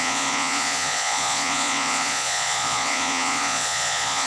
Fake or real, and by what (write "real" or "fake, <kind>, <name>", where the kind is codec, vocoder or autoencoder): fake, vocoder, Vocos